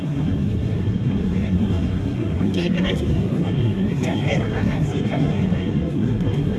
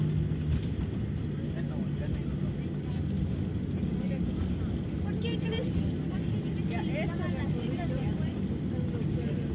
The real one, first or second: second